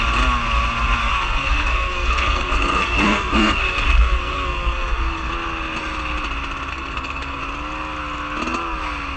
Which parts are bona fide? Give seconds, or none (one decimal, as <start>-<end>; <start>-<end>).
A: 0.0-1.0; 5.3-6.7; 7.4-9.2